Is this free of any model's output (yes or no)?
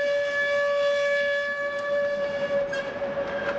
yes